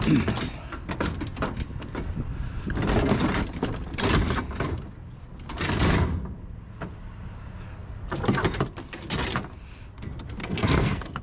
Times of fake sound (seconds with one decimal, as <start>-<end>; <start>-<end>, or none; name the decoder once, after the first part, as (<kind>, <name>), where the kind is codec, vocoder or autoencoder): 10.4-11.2 (codec, SNAC)